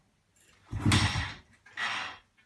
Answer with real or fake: real